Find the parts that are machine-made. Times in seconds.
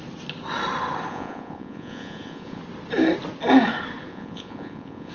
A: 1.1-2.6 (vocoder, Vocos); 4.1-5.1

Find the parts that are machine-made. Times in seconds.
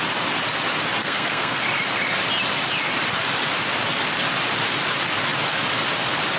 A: 1.0-1.6 (codec, SNAC)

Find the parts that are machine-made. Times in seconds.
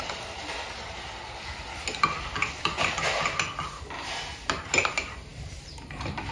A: none